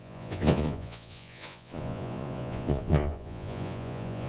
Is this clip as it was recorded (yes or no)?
no